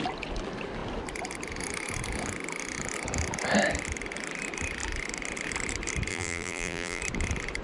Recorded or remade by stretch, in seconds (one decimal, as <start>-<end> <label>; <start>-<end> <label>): 0.0-6.1 recorded; 6.1-7.0 remade; 7.0-7.6 recorded